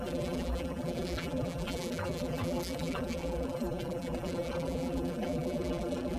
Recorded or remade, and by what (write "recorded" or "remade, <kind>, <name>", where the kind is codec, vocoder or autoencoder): remade, vocoder, BigVGAN v2